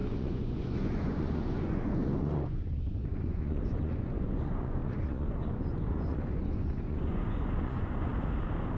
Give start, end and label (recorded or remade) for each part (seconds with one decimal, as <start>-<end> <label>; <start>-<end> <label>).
0.0-8.1 remade; 8.1-8.8 recorded